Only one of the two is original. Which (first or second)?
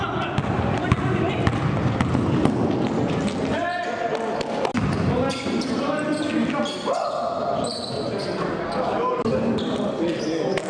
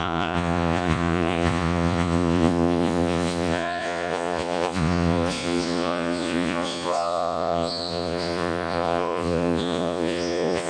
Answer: first